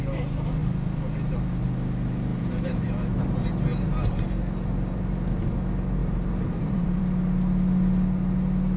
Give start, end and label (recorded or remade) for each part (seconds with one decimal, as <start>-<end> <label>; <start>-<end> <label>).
0.0-2.3 recorded; 2.3-2.8 remade; 2.8-6.0 recorded; 6.0-7.0 remade; 7.0-8.8 recorded